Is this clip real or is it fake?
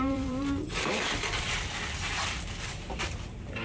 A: fake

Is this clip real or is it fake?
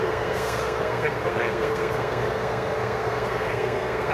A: fake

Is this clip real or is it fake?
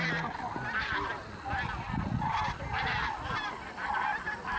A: real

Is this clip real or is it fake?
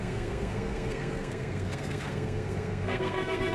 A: fake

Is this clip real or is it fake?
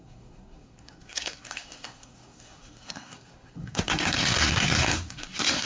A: fake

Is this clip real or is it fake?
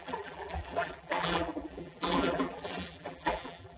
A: fake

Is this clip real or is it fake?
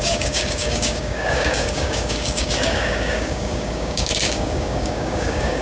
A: fake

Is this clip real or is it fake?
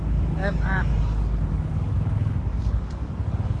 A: fake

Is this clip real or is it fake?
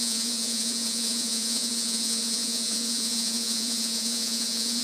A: fake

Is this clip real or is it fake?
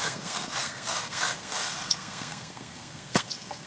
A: fake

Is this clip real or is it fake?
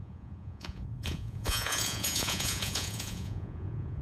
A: fake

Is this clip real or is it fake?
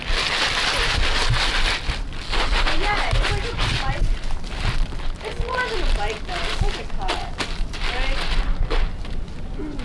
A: real